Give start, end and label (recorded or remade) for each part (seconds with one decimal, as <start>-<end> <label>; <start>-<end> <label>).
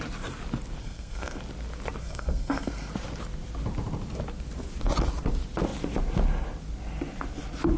0.0-0.8 recorded; 0.8-1.4 remade; 1.4-2.0 recorded; 2.0-2.9 remade; 2.9-7.8 recorded